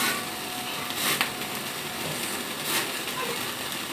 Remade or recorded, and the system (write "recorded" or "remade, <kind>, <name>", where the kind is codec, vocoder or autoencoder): recorded